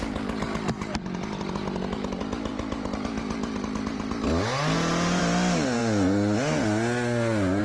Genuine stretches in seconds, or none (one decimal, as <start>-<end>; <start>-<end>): 0.0-7.6